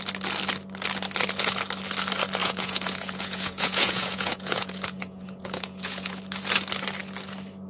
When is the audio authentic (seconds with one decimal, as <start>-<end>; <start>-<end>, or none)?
0.0-2.4; 6.2-7.7